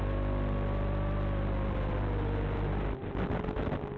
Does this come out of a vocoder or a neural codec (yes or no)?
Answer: no